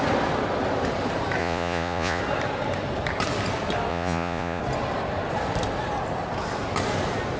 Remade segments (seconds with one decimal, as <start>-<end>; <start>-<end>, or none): 1.4-2.2; 3.9-4.6

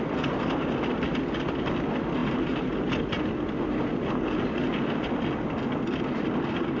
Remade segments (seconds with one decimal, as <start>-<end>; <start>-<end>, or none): none

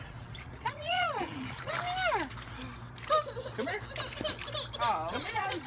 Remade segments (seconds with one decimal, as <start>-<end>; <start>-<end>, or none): 0.0-1.7; 5.1-5.7

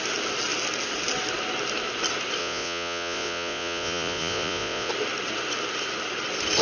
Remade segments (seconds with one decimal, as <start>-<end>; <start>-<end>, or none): 2.4-4.9

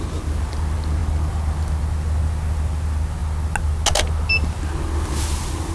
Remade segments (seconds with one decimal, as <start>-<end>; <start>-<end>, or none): none